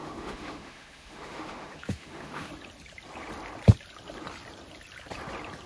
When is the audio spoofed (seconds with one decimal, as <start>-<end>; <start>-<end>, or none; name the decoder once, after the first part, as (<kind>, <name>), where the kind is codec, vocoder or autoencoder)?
0.0-2.5 (autoencoder, DAC-VAE)